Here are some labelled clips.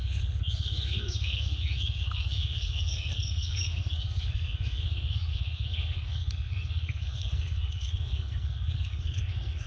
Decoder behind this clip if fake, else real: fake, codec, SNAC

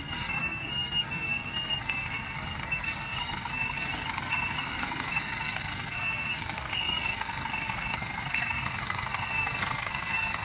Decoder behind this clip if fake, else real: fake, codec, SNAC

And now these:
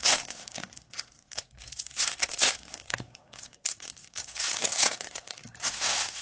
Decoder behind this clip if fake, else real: fake, codec, SNAC